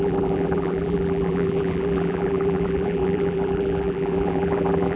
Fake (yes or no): yes